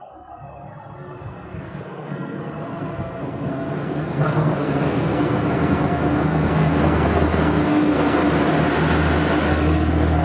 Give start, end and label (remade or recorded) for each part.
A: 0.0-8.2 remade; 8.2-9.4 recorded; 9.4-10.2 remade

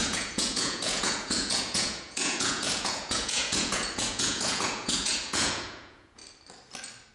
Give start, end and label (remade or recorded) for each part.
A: 0.0-6.2 remade; 6.2-7.1 recorded

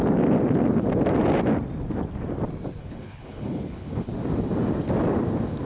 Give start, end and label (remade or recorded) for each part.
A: 0.0-2.8 recorded; 2.8-4.1 remade; 4.1-5.7 recorded

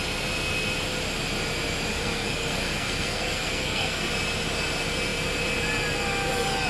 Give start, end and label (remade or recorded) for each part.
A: 0.0-1.9 recorded; 1.9-4.1 remade; 4.1-6.7 recorded

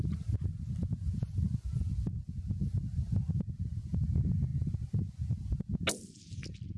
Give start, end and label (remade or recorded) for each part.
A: 0.0-6.8 recorded

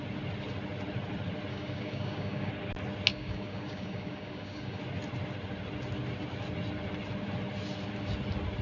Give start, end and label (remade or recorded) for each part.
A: 0.0-1.5 recorded; 1.5-2.5 remade; 2.5-3.1 recorded; 3.1-4.8 remade; 4.8-8.6 recorded

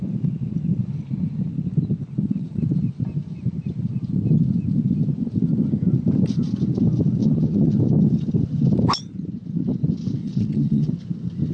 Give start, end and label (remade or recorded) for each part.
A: 0.0-2.1 recorded; 2.1-2.6 remade; 2.6-7.2 recorded; 7.2-7.8 remade; 7.8-10.2 recorded; 10.2-10.9 remade; 10.9-11.5 recorded

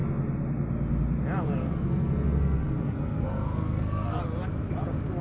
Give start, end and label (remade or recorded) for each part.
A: 0.0-1.6 recorded; 1.6-4.2 remade; 4.2-5.2 recorded